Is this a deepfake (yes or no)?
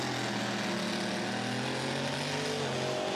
no